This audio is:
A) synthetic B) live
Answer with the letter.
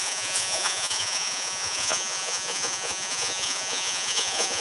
A